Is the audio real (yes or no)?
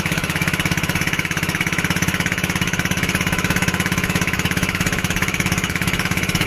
no